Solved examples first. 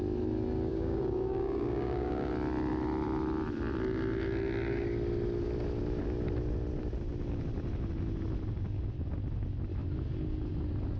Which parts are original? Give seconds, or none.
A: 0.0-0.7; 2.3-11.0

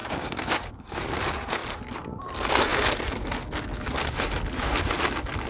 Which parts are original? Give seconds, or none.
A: 0.7-5.5

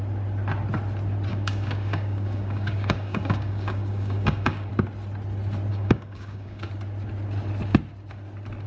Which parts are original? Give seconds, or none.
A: 0.0-1.3; 4.7-5.7; 6.7-8.7

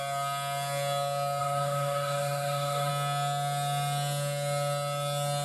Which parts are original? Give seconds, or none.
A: 0.0-1.4; 2.9-5.4

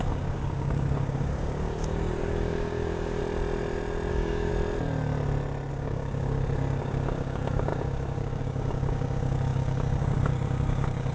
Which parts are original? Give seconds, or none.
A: 3.2-4.1; 4.5-5.7